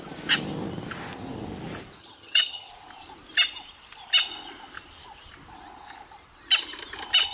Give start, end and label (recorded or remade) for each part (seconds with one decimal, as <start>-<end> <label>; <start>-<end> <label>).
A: 0.0-2.0 recorded; 2.0-2.7 remade; 2.7-7.3 recorded